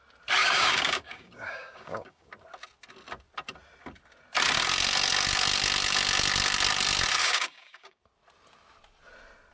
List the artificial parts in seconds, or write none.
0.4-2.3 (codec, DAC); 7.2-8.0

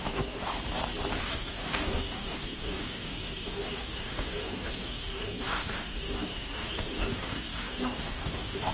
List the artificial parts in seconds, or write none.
0.0-0.5 (codec, DAC); 1.2-8.7